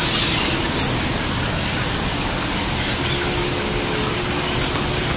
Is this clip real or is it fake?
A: real